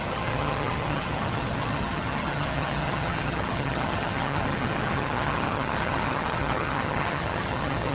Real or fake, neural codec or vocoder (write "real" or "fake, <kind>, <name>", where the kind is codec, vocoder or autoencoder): fake, vocoder, HiFi-GAN